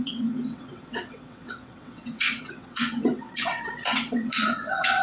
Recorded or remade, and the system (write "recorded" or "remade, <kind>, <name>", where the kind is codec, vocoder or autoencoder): remade, vocoder, WaveNeXt